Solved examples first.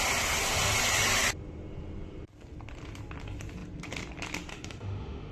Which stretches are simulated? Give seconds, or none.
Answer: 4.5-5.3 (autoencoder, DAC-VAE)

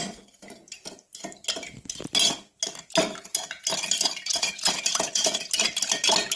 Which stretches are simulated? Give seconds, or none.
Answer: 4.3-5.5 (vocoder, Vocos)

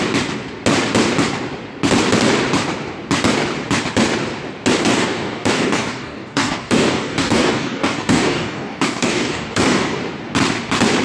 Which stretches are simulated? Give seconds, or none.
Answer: 4.8-10.0 (codec, DAC)

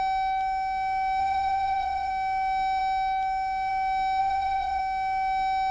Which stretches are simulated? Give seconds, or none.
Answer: 1.2-2.1 (vocoder, WaveNeXt); 4.2-4.8